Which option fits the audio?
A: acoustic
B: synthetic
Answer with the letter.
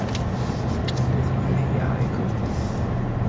A